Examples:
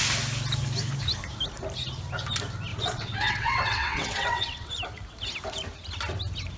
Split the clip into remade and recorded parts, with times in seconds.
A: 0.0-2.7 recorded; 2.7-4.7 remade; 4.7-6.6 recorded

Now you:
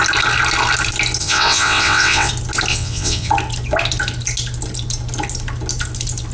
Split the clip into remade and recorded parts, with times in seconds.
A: 0.0-1.2 recorded; 1.2-2.3 remade; 2.3-2.7 recorded; 2.7-3.3 remade; 3.3-6.3 recorded

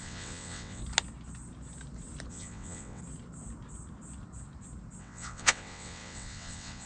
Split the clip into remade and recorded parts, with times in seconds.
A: 0.0-0.8 remade; 0.8-2.3 recorded; 2.3-3.0 remade; 3.0-5.0 recorded; 5.0-6.9 remade

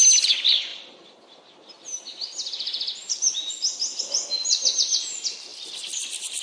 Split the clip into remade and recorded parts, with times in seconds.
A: 0.0-6.4 recorded

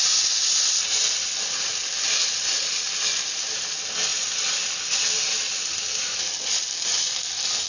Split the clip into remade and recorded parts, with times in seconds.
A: 0.0-7.7 recorded

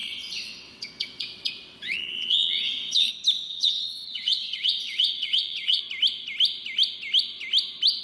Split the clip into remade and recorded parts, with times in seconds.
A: 0.0-3.1 remade; 3.1-3.5 recorded; 3.5-5.8 remade; 5.8-8.0 recorded

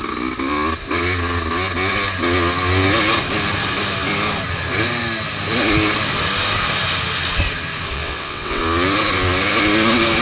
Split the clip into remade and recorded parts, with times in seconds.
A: 0.0-7.9 recorded; 7.9-8.6 remade; 8.6-10.2 recorded